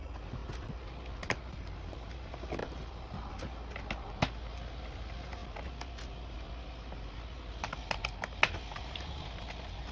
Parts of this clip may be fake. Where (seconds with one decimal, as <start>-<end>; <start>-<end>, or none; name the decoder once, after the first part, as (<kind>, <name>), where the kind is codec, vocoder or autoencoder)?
0.4-0.9 (vocoder, BigVGAN v2); 2.6-3.3